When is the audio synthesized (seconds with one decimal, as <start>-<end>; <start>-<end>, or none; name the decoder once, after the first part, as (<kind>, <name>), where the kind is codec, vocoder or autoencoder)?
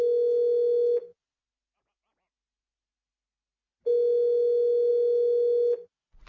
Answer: none